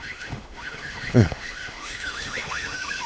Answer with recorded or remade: remade